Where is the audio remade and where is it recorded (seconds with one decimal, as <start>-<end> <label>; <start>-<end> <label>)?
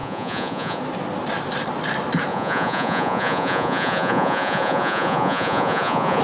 0.0-0.8 remade; 0.8-2.3 recorded; 2.3-6.2 remade